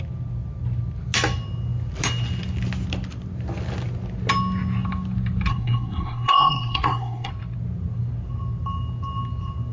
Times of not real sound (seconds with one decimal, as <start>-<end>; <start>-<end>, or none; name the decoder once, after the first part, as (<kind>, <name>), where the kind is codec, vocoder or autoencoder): 5.5-7.3 (codec, SNAC)